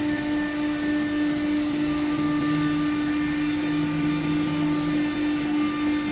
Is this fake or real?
real